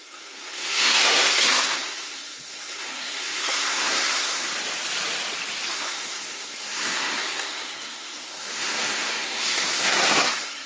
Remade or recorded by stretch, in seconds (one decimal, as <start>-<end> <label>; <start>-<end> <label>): 0.0-4.5 remade; 4.5-5.7 recorded; 5.7-10.7 remade